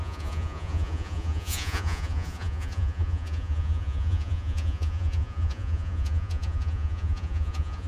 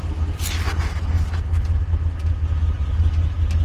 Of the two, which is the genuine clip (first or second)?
second